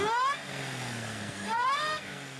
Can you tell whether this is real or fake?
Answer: fake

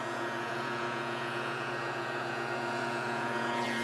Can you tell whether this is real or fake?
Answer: fake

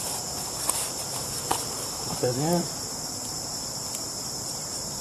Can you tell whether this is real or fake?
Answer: fake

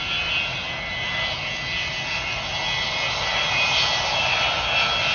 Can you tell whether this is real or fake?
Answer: real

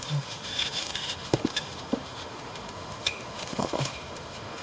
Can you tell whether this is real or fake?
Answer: fake